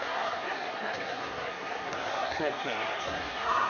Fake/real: fake